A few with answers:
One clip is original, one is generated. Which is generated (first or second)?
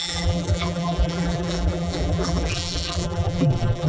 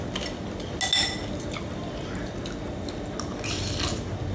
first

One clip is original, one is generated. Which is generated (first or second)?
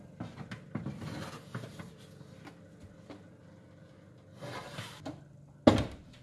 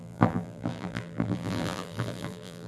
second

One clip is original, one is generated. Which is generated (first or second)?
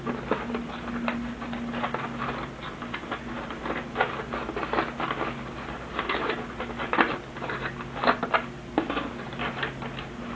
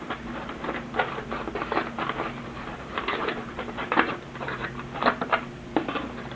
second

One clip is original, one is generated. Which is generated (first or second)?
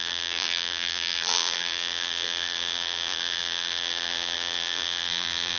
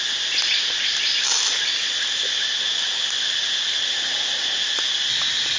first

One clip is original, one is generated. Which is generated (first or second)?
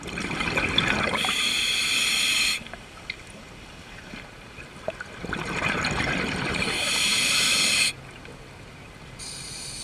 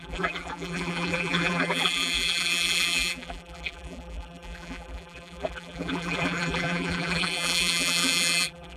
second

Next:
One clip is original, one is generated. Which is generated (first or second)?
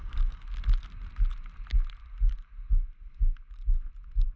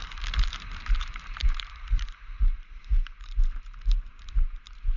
second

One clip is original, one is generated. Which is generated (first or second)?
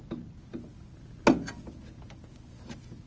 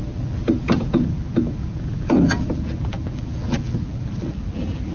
second